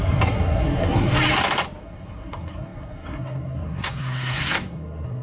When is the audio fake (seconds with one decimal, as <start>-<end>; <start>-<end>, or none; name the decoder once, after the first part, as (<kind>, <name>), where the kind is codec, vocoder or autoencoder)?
0.0-1.1 (codec, SNAC); 1.8-5.2